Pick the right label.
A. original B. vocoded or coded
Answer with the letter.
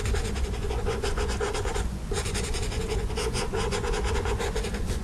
B